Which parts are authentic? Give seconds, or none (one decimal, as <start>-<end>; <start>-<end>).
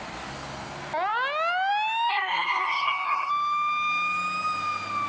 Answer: 0.0-2.1; 3.3-5.1